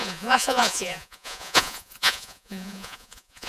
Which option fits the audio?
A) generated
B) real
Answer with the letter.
A